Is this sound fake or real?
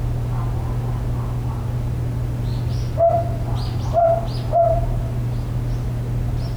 real